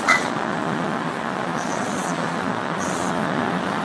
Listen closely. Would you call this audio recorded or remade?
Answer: remade